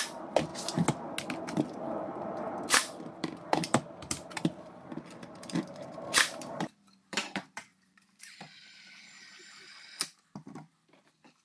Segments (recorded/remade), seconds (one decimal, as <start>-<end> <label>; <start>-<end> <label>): 0.0-0.5 remade; 0.5-1.4 recorded; 1.4-11.4 remade